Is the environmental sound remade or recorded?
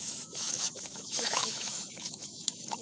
remade